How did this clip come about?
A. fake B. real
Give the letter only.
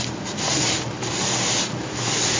B